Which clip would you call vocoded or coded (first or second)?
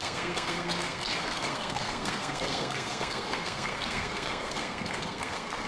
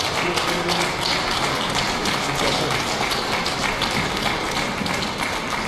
first